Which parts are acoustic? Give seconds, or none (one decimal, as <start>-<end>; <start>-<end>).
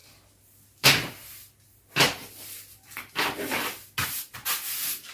0.0-5.1